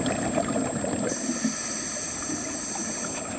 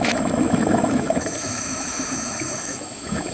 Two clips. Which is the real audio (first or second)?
first